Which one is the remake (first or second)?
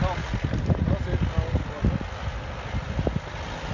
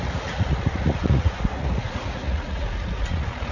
second